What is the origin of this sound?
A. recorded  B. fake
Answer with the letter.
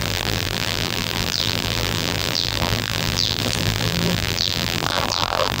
B